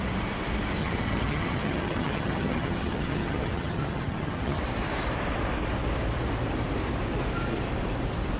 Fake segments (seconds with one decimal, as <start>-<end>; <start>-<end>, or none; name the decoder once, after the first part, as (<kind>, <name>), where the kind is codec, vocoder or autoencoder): 0.8-4.6 (vocoder, HiFi-GAN)